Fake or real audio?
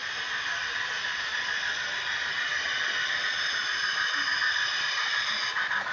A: real